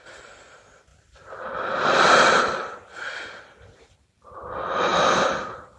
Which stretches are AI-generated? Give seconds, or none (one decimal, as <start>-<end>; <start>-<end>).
0.9-4.3; 4.9-5.8

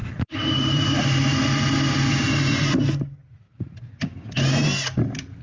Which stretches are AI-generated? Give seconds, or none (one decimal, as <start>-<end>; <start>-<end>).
0.0-1.2; 2.1-5.4

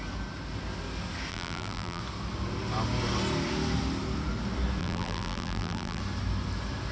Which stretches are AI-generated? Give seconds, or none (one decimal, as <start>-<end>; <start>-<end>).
1.3-2.0; 4.8-6.0

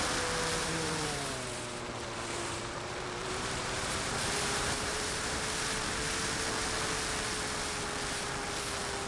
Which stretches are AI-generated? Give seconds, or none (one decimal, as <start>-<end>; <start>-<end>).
0.6-5.4

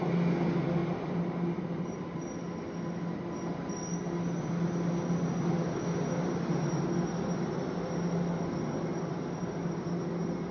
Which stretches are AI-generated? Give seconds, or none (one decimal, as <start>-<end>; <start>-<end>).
0.8-2.2

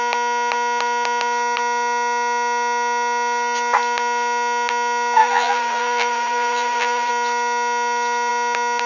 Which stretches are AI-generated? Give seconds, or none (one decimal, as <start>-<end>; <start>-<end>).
5.2-7.1

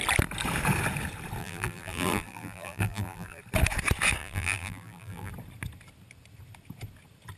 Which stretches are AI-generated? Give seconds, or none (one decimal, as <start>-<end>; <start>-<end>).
1.4-3.4; 4.2-5.3